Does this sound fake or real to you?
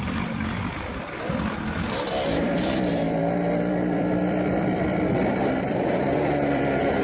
fake